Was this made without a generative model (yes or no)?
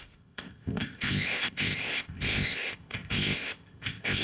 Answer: no